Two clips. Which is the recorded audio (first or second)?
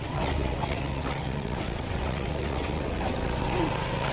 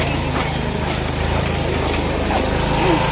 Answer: second